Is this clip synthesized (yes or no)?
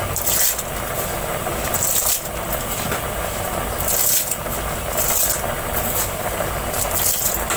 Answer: no